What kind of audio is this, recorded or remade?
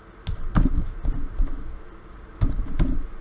recorded